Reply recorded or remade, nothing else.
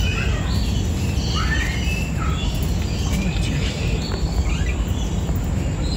recorded